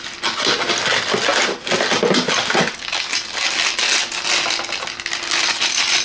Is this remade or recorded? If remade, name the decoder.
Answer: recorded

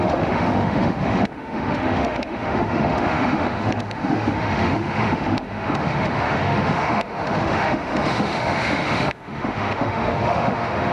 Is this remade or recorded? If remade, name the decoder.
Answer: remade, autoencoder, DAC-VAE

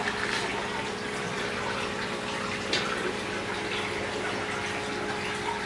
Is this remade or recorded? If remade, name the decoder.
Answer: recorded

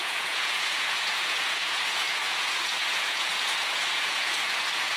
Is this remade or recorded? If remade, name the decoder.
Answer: remade, vocoder, Vocos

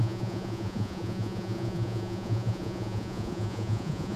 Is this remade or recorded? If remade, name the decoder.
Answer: remade, vocoder, Vocos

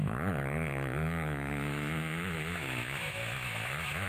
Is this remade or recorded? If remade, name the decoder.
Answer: remade, autoencoder, DAC-VAE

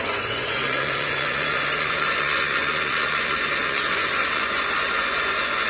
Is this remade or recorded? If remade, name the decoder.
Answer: remade, vocoder, Vocos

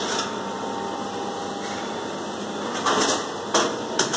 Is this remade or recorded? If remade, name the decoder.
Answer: recorded